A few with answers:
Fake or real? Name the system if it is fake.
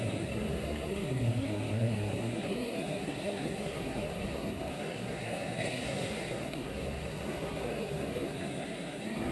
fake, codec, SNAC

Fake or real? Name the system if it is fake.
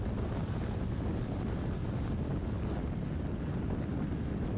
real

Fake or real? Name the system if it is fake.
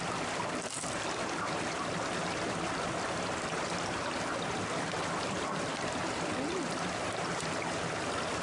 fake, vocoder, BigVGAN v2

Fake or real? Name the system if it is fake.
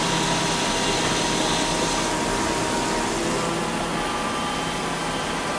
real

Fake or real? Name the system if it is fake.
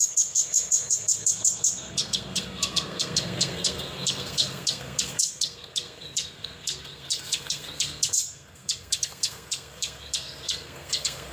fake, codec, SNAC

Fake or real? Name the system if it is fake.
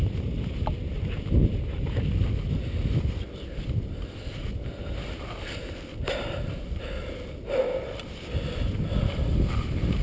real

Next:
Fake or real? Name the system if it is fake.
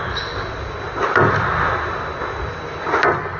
real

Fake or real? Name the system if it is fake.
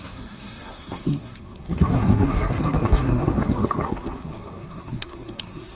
fake, codec, SNAC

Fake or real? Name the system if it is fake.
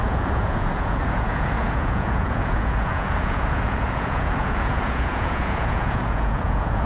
fake, vocoder, Vocos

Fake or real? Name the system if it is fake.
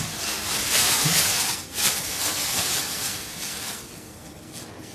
fake, codec, SNAC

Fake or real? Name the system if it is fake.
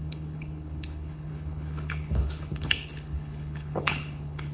fake, codec, HILCodec